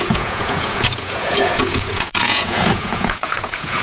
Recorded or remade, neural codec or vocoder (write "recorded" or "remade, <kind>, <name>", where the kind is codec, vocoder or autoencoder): remade, vocoder, Vocos